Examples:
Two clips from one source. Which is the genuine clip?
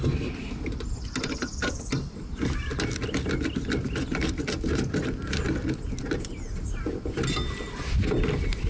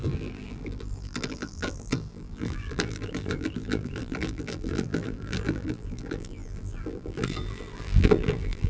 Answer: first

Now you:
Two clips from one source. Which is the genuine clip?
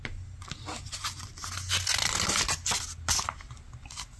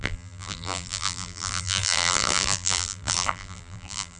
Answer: first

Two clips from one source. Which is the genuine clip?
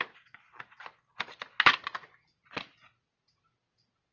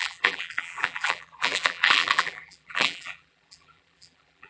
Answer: first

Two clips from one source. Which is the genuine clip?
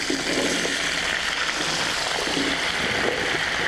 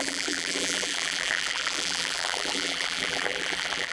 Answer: first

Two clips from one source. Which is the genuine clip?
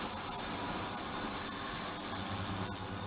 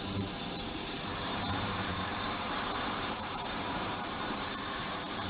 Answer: first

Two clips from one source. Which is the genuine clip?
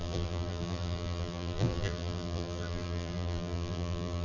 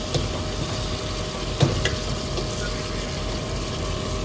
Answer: second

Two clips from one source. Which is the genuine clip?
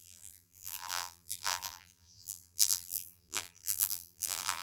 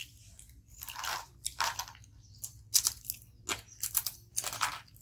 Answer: second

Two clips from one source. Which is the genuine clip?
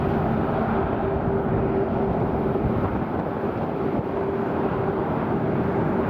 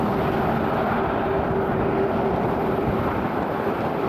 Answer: first